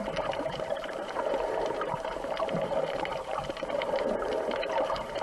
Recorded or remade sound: remade